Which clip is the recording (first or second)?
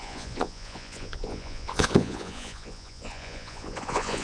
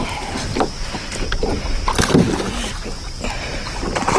second